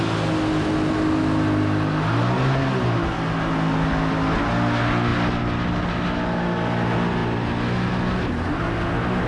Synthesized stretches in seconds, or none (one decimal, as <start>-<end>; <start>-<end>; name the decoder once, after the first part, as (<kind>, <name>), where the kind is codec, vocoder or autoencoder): none